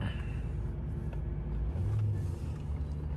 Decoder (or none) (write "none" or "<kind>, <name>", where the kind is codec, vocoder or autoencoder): none